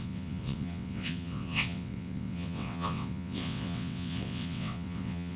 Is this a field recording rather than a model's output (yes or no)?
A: no